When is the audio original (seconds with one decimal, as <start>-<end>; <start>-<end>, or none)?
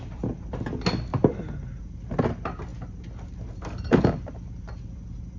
0.0-5.4